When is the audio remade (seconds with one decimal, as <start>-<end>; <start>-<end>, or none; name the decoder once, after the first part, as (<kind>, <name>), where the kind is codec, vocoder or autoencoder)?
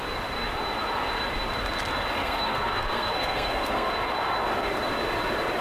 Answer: 2.2-3.9 (codec, SNAC)